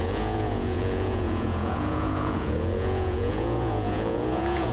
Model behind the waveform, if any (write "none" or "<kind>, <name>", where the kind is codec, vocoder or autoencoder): vocoder, Vocos